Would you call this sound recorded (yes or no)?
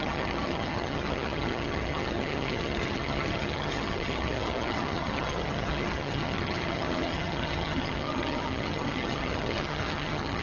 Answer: no